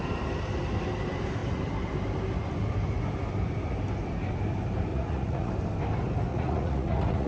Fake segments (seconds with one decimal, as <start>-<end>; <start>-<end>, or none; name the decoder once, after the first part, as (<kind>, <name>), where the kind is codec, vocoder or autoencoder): 4.9-5.5 (vocoder, Vocos); 6.3-7.3